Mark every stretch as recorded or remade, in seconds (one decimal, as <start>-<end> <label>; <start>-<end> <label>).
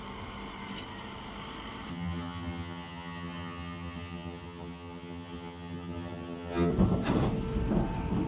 0.0-1.9 recorded; 1.9-6.7 remade; 6.7-8.3 recorded